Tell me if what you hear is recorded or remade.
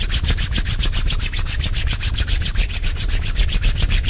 recorded